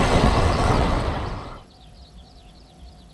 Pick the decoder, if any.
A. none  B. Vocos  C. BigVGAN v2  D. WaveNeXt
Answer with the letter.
D